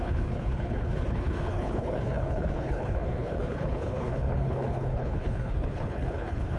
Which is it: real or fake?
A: fake